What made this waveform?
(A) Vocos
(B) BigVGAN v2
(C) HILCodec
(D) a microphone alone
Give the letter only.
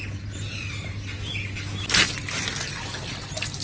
D